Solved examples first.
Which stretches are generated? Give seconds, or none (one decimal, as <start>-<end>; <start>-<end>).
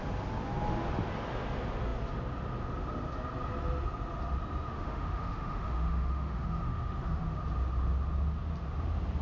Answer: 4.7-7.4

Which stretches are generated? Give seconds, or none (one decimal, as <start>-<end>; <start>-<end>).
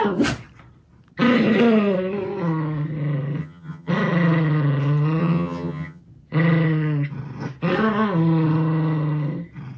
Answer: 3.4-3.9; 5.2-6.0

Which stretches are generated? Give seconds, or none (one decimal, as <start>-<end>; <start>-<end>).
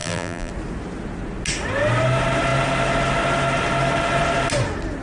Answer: 0.0-0.5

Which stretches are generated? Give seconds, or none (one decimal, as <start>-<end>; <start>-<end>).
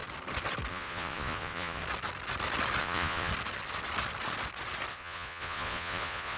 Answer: 0.7-1.8; 2.8-3.3; 4.9-6.4